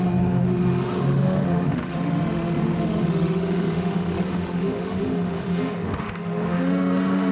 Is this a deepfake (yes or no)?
yes